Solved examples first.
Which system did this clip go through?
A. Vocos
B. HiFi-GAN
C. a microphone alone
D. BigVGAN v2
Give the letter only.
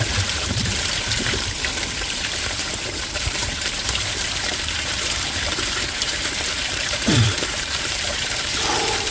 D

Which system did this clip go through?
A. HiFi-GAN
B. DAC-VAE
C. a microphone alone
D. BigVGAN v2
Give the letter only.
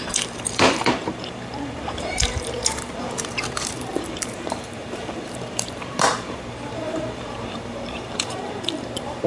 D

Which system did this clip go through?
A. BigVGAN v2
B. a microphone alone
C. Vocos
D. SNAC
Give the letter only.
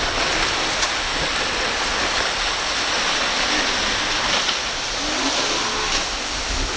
B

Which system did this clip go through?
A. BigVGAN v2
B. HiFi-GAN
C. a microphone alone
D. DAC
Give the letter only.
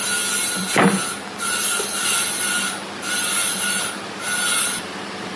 C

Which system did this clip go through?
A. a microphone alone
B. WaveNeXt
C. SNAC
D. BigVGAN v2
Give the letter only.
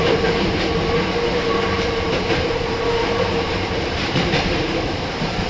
D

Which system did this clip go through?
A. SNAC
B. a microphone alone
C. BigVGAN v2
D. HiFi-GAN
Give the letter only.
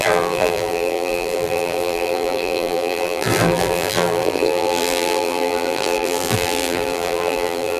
C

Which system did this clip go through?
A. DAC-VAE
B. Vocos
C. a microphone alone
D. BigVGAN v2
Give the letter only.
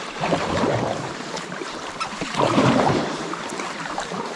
D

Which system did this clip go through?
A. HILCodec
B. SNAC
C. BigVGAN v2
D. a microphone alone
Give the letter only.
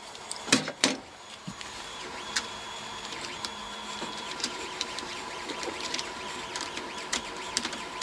C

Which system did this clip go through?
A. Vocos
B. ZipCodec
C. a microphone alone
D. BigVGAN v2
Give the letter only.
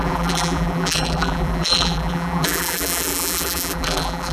D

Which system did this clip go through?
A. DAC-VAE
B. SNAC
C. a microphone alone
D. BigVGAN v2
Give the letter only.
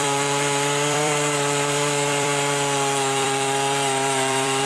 D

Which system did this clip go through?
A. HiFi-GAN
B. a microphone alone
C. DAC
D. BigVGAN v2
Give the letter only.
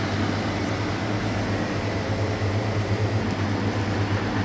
B